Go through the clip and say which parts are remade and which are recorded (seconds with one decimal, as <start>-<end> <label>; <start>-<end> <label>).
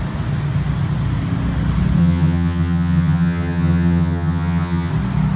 0.0-2.0 recorded; 2.0-4.9 remade; 4.9-5.4 recorded